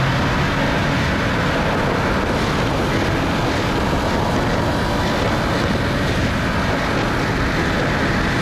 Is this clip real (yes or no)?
yes